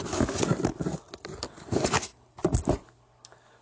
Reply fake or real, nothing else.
real